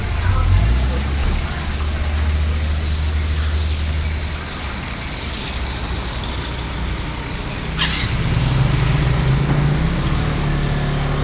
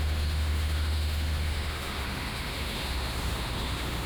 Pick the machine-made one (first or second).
second